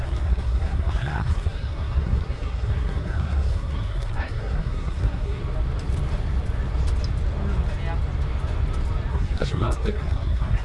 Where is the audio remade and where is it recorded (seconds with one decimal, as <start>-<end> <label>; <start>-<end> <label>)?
0.0-5.4 remade; 5.4-9.1 recorded; 9.1-10.6 remade